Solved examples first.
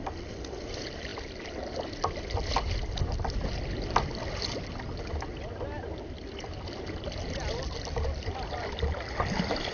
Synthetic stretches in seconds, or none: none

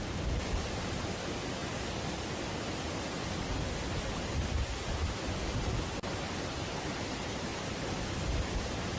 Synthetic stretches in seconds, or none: none